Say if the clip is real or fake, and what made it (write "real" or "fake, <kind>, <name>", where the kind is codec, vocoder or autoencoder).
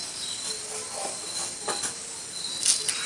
real